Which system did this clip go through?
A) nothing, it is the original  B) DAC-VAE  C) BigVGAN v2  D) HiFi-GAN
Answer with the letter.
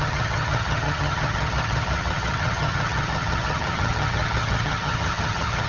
D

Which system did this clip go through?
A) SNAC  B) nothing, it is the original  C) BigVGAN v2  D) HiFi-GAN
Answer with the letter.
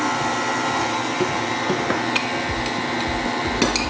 B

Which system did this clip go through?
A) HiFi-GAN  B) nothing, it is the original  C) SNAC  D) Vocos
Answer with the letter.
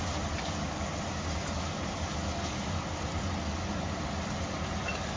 B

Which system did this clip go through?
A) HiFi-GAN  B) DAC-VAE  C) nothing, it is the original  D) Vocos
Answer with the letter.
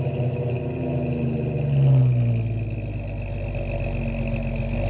C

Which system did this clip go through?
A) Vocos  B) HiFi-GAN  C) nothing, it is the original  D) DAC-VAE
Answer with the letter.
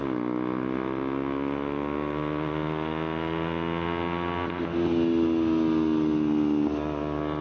C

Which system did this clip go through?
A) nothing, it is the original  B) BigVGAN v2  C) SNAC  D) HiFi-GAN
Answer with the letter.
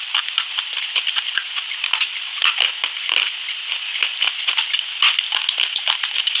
A